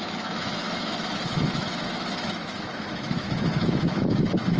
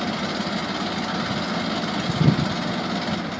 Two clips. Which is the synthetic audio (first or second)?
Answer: first